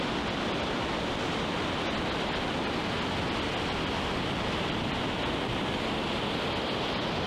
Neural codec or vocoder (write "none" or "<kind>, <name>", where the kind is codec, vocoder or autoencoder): none